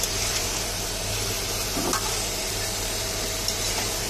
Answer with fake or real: fake